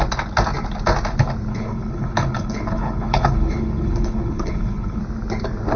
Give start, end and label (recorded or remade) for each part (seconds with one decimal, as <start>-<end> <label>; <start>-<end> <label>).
0.0-1.5 recorded; 1.5-5.0 remade; 5.0-5.8 recorded